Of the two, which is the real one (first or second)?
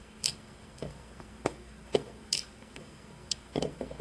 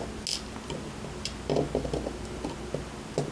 second